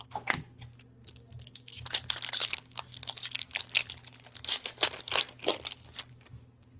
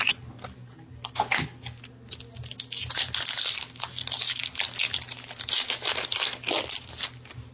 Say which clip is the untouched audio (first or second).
second